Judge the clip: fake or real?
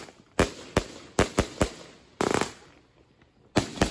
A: real